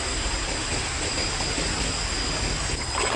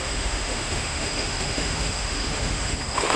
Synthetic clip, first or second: second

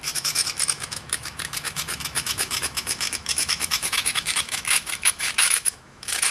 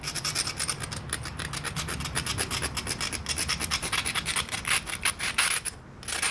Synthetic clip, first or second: first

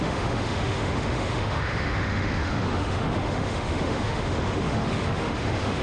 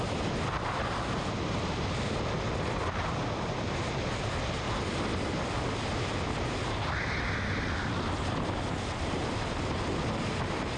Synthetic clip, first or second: first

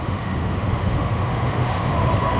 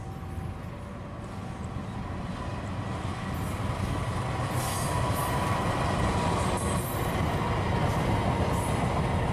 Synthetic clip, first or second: first